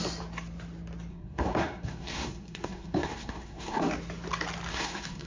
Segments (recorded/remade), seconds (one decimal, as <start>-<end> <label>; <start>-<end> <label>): 0.0-1.1 recorded; 1.1-3.9 remade; 3.9-4.7 recorded; 4.7-5.3 remade